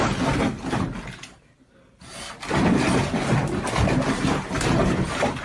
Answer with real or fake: real